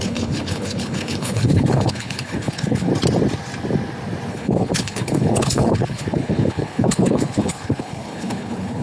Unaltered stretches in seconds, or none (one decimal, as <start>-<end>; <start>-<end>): 2.9-4.3